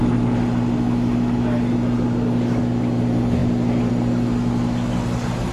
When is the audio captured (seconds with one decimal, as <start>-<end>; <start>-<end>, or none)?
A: 0.0-5.5